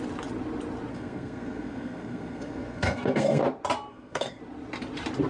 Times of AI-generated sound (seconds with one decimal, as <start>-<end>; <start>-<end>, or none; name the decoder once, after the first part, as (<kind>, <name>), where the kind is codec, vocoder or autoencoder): 0.9-3.4 (codec, SNAC); 3.9-4.4